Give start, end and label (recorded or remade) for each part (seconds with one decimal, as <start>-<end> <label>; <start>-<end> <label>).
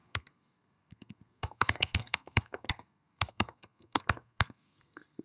0.0-5.2 remade